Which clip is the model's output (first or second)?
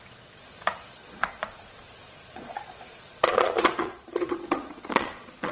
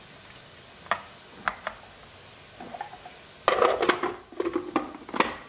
first